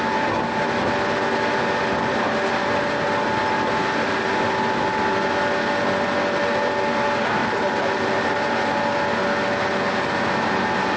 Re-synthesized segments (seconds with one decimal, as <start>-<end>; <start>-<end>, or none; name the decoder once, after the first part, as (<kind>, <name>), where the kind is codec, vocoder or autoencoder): 7.4-8.8 (vocoder, BigVGAN v2)